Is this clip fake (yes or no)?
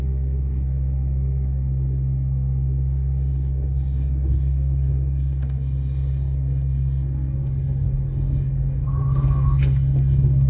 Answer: yes